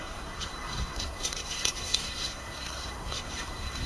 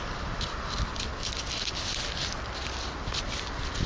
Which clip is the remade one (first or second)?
first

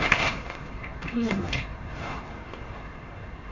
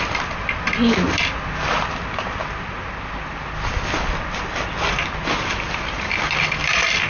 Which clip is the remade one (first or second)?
first